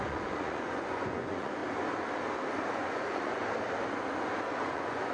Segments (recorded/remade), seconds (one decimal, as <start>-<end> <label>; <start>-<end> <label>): 0.0-1.6 remade; 1.6-2.7 recorded; 2.7-3.4 remade; 3.4-4.6 recorded; 4.6-5.1 remade